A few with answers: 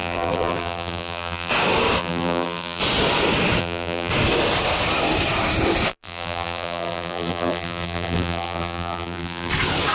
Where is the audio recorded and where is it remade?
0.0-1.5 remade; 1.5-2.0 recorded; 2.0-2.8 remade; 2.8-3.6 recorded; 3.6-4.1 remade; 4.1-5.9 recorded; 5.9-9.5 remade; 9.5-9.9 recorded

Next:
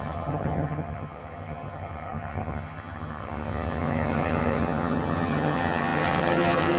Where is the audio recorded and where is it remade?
0.0-6.8 remade

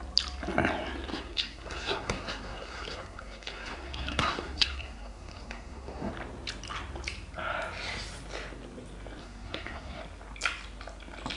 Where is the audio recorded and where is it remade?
0.0-1.1 recorded; 1.1-6.1 remade; 6.1-9.2 recorded; 9.2-10.0 remade; 10.0-11.4 recorded